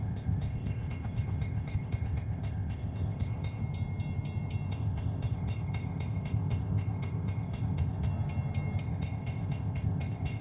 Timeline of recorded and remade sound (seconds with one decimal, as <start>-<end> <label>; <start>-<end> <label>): 0.0-3.6 remade; 3.6-4.7 recorded; 4.7-8.1 remade; 8.1-8.8 recorded; 8.8-10.4 remade